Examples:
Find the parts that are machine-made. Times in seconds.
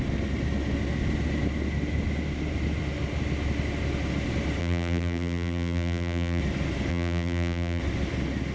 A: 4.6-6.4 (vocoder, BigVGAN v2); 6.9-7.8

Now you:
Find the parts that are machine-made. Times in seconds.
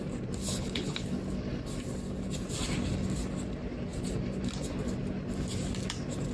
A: 0.4-1.1 (codec, HILCodec)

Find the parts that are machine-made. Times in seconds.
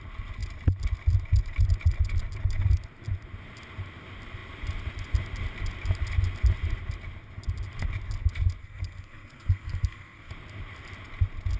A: 8.6-10.3 (codec, SNAC)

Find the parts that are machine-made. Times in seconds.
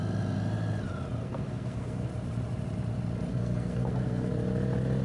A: 1.2-2.1 (codec, SNAC); 3.3-4.3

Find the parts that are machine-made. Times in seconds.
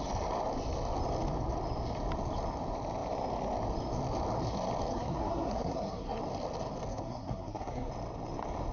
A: 4.9-6.2 (codec, SNAC); 6.9-7.9